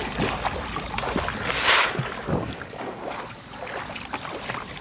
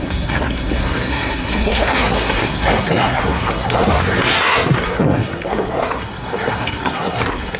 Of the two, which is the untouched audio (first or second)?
first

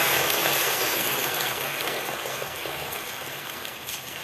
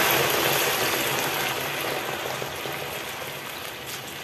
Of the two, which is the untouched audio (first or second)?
second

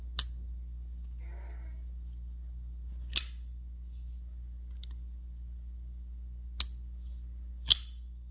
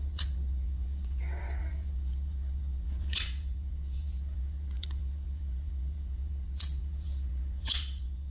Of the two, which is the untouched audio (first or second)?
first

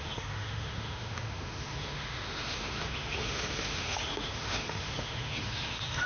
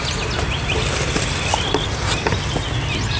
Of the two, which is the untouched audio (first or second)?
second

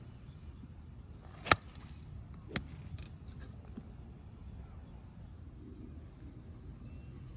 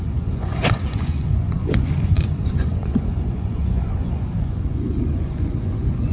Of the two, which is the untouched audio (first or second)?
first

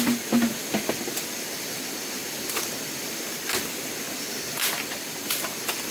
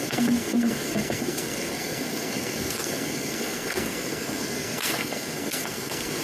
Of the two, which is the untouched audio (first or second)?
first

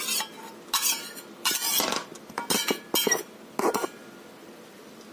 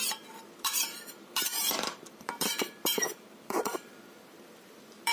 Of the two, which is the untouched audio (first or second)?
first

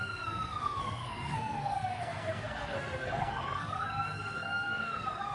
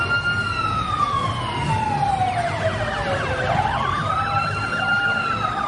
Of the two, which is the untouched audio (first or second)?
second